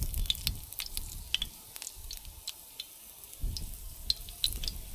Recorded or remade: recorded